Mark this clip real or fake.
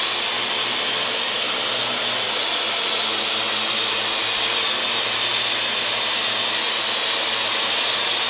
real